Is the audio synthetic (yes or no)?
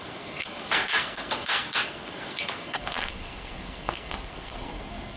yes